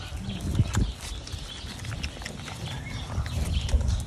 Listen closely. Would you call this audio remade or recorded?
recorded